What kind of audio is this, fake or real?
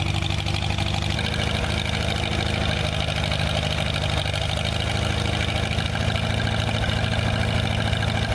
real